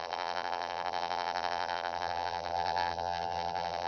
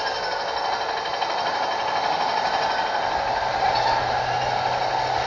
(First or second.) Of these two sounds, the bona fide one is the second